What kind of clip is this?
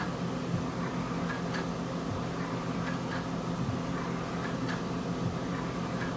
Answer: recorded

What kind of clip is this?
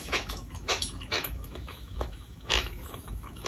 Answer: remade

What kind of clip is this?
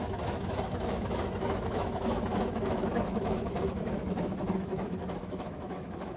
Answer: remade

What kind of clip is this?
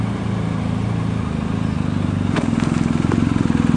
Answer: recorded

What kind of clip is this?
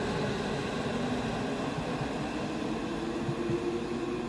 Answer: recorded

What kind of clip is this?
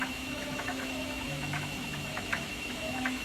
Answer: remade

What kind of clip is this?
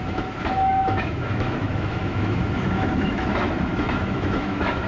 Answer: remade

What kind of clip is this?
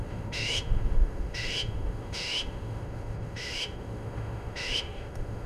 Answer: remade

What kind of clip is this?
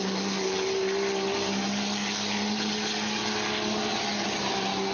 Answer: recorded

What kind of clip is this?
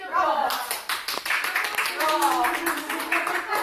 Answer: recorded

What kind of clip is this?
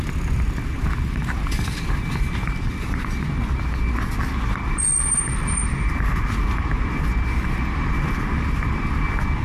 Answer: recorded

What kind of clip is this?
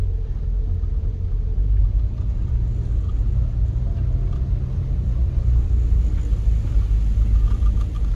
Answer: recorded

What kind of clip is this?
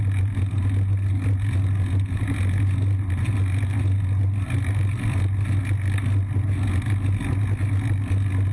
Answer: recorded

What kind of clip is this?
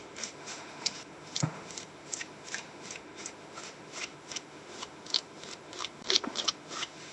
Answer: remade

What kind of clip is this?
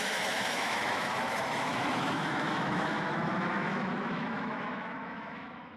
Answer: remade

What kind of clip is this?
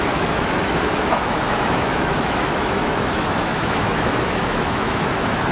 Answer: remade